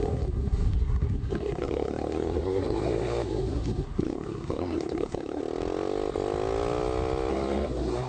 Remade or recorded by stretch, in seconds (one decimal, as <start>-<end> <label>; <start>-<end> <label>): 0.0-5.4 remade; 5.4-7.3 recorded; 7.3-8.1 remade

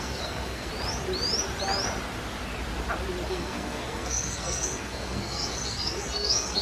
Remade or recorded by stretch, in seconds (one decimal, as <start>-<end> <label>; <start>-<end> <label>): 0.0-0.7 remade; 0.7-3.3 recorded; 3.3-6.6 remade

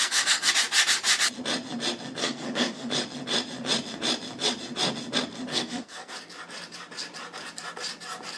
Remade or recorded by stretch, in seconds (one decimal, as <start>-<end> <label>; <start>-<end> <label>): 0.0-0.5 remade; 0.5-2.2 recorded; 2.2-2.9 remade; 2.9-5.5 recorded; 5.5-6.1 remade; 6.1-8.4 recorded

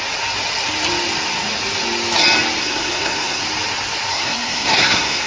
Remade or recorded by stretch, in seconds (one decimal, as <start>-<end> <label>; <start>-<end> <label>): 0.0-2.6 recorded; 2.6-3.4 remade; 3.4-4.1 recorded; 4.1-5.3 remade

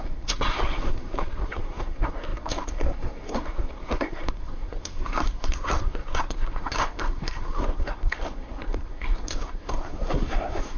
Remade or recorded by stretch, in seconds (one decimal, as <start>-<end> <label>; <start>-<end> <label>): 0.0-10.8 remade